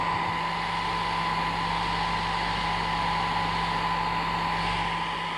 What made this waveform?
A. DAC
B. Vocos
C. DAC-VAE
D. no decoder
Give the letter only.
D